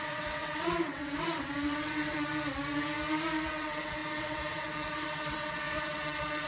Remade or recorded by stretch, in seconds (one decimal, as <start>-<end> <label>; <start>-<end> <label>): 0.0-2.3 remade; 2.3-3.5 recorded; 3.5-6.5 remade